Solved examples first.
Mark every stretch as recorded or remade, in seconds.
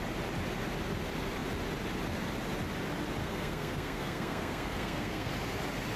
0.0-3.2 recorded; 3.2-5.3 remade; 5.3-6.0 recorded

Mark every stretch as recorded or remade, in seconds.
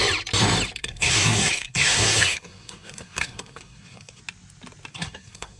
0.0-0.8 recorded; 0.8-4.2 remade; 4.2-4.9 recorded; 4.9-5.6 remade